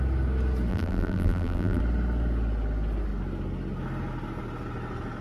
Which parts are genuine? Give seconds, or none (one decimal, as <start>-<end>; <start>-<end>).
0.0-0.7; 1.8-5.2

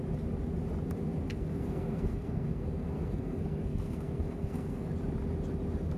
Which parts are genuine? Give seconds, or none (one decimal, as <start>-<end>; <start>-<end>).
0.0-1.3; 4.9-6.0

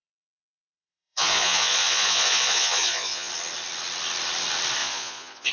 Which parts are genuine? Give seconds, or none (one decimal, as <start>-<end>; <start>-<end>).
3.3-4.8

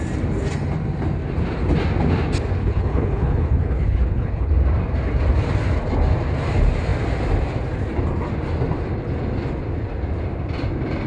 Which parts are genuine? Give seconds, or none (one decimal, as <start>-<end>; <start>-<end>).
0.0-2.6; 4.5-11.1

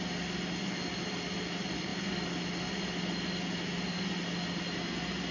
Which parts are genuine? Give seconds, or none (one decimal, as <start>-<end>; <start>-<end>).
0.0-5.3

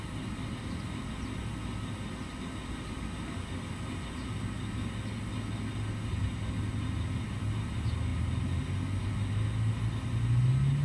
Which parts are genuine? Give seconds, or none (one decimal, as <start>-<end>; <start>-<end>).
0.0-10.8